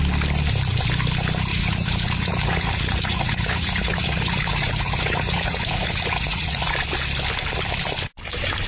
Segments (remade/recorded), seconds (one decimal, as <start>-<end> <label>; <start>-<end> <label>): 0.0-1.5 recorded; 1.5-6.7 remade; 6.7-8.7 recorded